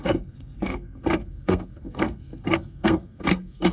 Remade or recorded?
remade